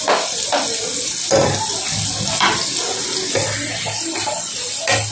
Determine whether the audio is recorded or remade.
recorded